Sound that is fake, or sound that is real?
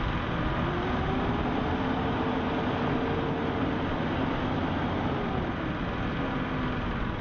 real